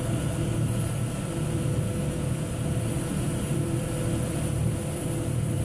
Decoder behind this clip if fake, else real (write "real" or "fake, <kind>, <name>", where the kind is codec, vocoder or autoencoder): fake, vocoder, BigVGAN v2